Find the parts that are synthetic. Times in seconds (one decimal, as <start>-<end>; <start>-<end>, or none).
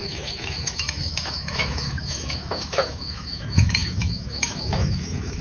0.0-5.4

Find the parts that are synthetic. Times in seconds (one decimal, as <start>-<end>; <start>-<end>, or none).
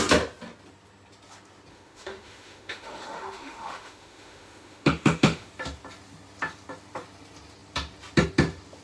1.7-5.5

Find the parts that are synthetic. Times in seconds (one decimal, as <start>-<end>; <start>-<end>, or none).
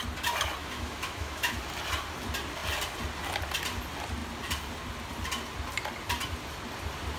0.6-1.6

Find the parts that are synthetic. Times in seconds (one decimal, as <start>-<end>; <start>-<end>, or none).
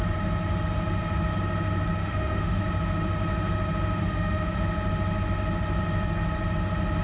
2.0-2.6; 4.0-4.6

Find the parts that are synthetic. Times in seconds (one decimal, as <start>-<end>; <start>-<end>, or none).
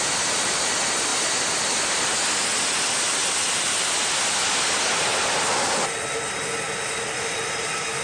none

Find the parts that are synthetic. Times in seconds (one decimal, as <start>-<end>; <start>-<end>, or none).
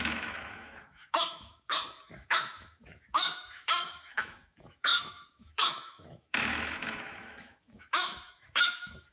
0.0-9.1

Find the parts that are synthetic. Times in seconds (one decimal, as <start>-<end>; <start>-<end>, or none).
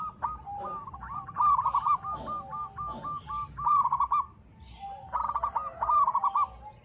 none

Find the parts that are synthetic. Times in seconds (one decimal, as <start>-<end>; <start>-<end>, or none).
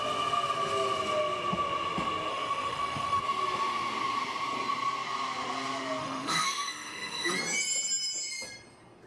2.3-3.2; 6.0-7.3